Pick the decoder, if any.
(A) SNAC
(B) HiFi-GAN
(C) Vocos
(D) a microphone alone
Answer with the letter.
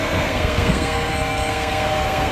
A